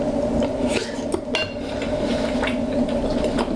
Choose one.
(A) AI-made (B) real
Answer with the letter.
B